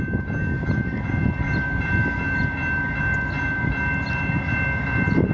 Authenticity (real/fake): real